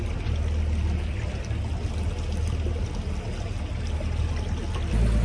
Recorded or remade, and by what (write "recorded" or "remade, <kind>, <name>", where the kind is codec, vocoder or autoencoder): recorded